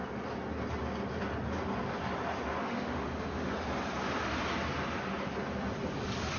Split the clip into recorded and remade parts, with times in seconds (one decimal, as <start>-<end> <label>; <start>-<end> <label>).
0.0-2.6 recorded; 2.6-3.5 remade; 3.5-6.4 recorded